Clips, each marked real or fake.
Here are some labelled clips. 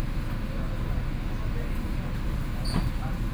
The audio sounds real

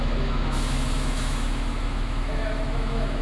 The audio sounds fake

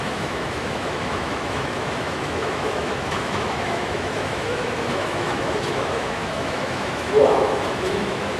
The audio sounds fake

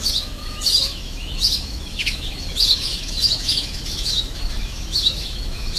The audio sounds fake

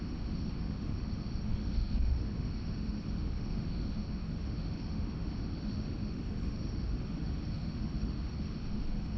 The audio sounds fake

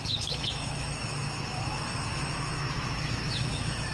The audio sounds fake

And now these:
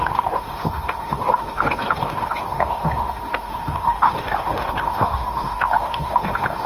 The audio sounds fake